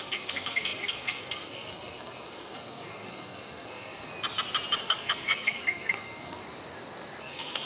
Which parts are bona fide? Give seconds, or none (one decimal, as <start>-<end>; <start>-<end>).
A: 4.1-4.8; 6.4-7.2